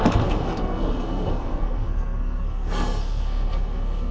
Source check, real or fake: fake